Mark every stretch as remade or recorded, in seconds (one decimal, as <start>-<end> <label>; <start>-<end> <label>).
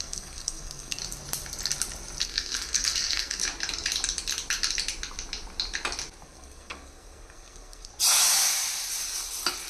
0.0-1.0 remade; 1.0-2.2 recorded; 2.2-3.4 remade; 3.4-6.2 recorded; 6.2-7.9 remade; 7.9-9.7 recorded